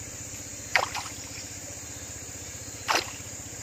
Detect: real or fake fake